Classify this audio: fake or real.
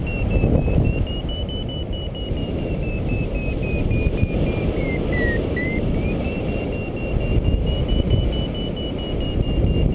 real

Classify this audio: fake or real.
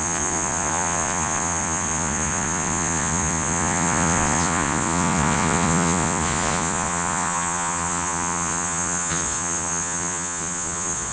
fake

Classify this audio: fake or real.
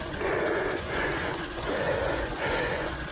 fake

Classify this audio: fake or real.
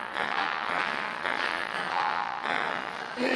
fake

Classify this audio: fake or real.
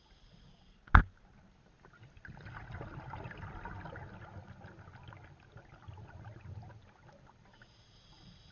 real